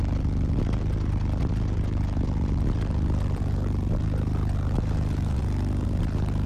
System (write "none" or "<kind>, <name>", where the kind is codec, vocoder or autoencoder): vocoder, BigVGAN v2